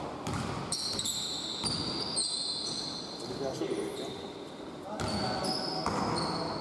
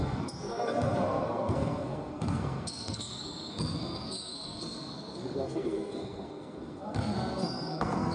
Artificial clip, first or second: second